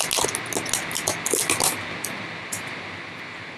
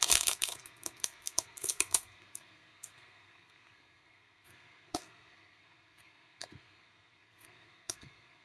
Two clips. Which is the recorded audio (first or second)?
first